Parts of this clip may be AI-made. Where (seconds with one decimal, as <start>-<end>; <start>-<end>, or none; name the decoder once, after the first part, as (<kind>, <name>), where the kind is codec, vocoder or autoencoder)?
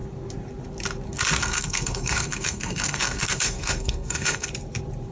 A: 1.4-4.5 (codec, SNAC)